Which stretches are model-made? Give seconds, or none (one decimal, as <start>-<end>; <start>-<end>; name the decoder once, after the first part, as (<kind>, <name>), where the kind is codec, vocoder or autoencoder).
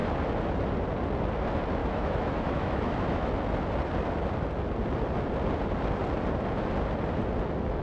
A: 1.8-3.3 (autoencoder, DAC-VAE)